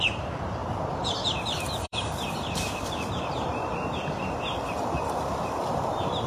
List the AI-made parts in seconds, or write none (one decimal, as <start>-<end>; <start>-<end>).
0.0-6.3